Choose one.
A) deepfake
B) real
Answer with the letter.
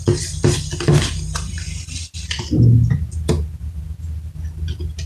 B